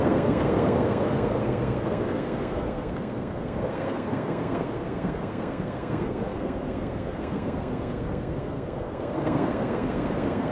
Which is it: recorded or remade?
remade